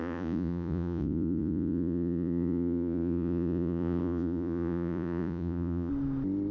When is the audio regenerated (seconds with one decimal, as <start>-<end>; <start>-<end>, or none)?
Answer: 0.0-5.9